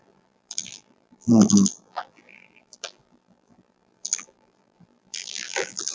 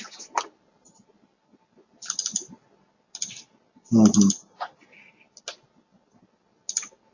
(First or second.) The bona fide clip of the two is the second